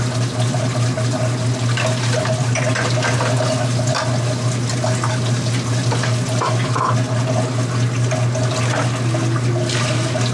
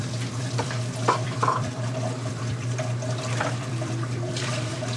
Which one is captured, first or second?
first